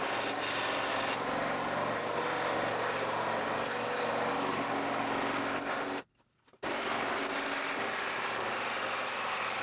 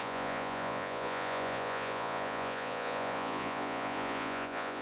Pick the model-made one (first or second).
second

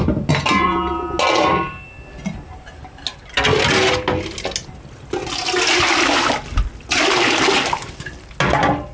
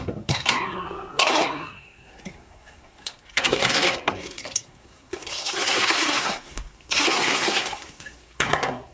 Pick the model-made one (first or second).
second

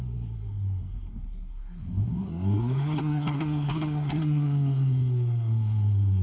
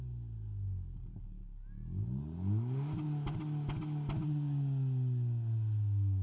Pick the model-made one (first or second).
first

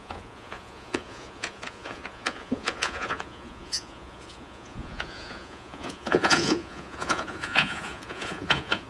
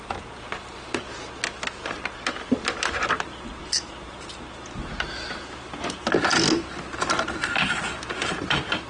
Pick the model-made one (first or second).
first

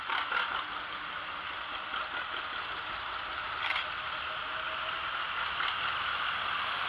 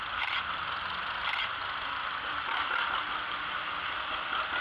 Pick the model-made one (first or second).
second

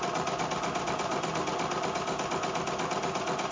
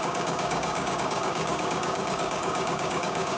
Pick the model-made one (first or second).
second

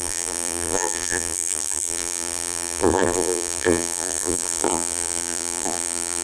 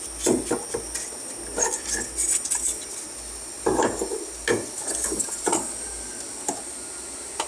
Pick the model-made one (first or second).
first